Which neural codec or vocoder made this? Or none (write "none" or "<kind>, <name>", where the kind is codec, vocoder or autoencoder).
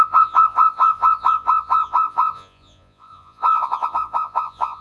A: vocoder, Vocos